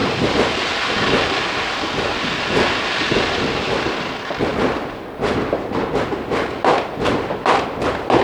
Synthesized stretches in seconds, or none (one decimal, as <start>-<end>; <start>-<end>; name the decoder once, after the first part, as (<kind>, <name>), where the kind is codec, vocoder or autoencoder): 2.7-8.2 (vocoder, BigVGAN v2)

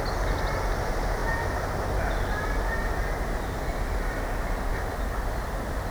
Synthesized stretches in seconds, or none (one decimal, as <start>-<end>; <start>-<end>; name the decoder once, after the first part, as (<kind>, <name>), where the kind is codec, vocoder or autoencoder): none

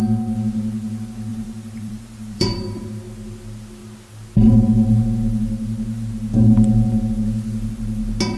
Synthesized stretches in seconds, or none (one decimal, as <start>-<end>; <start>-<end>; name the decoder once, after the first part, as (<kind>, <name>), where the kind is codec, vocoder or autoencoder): 1.3-2.9 (vocoder, BigVGAN v2)

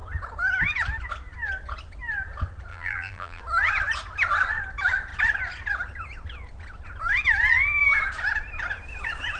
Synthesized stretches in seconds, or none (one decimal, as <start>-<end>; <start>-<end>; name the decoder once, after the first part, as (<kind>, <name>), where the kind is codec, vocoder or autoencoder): 2.7-3.4 (vocoder, BigVGAN v2)

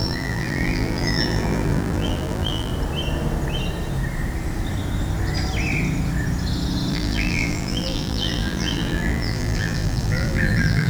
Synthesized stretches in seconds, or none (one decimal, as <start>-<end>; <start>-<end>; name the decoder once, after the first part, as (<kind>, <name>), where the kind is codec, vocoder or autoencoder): 0.0-2.7 (vocoder, BigVGAN v2); 6.9-10.9

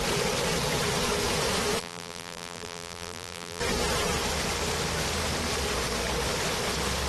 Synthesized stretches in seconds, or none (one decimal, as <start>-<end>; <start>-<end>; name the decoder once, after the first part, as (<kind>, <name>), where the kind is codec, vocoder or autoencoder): 1.8-3.6 (vocoder, BigVGAN v2)

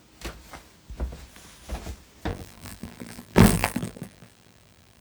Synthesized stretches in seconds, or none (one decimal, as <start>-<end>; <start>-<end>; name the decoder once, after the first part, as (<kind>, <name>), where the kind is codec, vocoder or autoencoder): 2.3-5.0 (vocoder, BigVGAN v2)

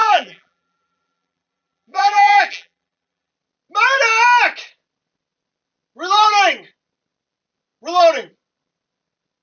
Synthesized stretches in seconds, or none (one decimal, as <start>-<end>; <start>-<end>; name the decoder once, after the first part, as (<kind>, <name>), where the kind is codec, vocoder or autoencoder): 0.0-3.3 (vocoder, BigVGAN v2)